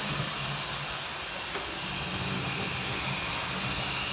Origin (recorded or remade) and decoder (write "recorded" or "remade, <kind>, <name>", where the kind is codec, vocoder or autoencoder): recorded